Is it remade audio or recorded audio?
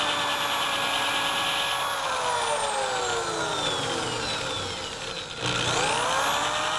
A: recorded